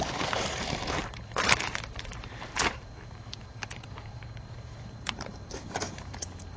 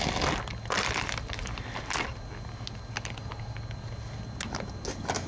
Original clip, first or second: second